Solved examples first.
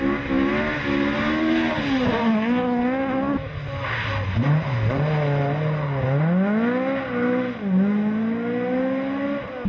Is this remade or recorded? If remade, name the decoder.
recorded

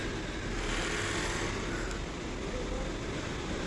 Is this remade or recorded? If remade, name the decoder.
recorded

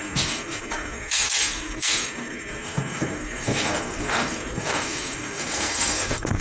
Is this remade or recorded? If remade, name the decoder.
remade, codec, SNAC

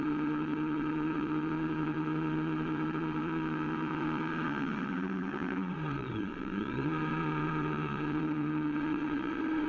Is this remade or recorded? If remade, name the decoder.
remade, vocoder, WaveNeXt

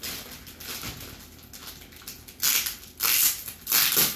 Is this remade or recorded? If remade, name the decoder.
recorded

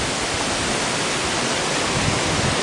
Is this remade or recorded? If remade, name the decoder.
recorded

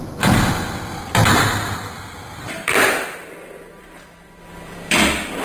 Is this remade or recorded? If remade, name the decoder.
remade, vocoder, BigVGAN v2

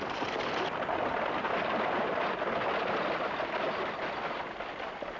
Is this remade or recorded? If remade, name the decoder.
recorded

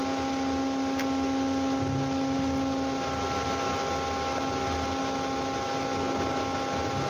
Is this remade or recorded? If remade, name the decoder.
recorded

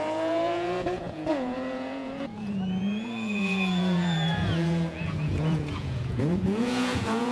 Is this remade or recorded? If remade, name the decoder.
remade, vocoder, Vocos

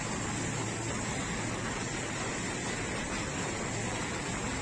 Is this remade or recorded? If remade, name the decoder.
recorded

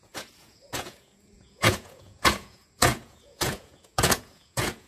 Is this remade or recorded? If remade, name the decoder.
remade, vocoder, Vocos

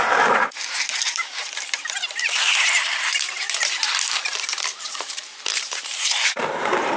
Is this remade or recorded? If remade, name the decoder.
remade, vocoder, BigVGAN v2